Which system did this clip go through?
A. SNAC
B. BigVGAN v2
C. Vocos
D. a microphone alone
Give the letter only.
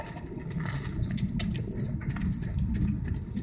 D